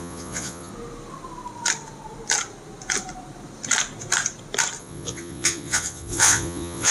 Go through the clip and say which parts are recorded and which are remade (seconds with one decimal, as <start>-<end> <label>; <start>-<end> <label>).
0.0-0.7 remade; 0.7-4.8 recorded; 4.8-6.9 remade